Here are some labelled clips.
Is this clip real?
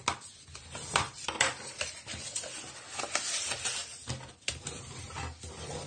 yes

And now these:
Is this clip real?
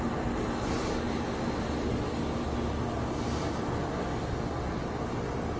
yes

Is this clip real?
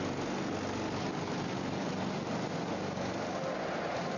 yes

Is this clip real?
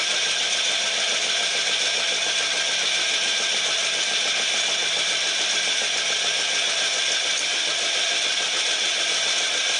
yes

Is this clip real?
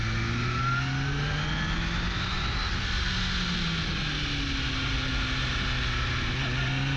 yes